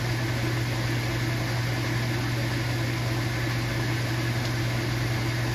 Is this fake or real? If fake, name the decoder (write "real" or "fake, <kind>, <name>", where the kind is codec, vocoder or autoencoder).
real